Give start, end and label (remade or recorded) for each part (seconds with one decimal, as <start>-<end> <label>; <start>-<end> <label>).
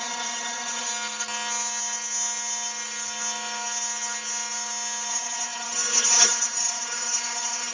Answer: 0.0-0.9 remade; 0.9-5.1 recorded; 5.1-7.7 remade